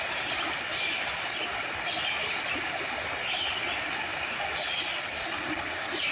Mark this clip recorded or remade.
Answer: recorded